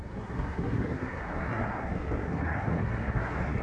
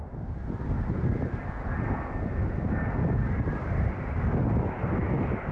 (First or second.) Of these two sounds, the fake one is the first